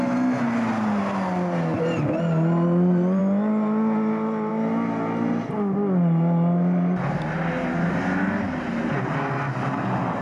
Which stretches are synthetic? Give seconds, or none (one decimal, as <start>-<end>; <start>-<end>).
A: none